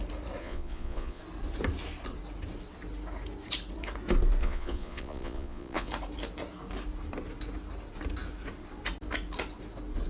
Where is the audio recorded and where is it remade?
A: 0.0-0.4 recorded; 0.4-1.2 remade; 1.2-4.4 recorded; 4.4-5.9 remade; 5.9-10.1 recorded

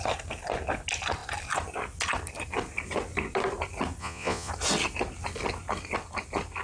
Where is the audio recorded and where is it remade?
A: 0.0-4.0 recorded; 4.0-4.5 remade; 4.5-6.6 recorded

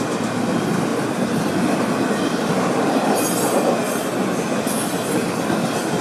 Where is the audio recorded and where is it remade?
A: 0.0-0.9 recorded; 0.9-1.9 remade; 1.9-2.4 recorded; 2.4-2.9 remade; 2.9-6.0 recorded

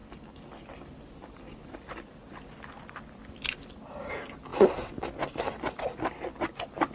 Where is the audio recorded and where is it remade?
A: 0.0-6.9 recorded